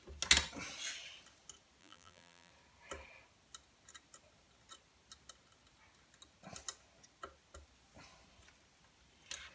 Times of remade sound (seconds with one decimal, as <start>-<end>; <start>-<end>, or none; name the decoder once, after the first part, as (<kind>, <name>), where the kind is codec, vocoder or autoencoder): 1.8-2.5 (vocoder, BigVGAN v2)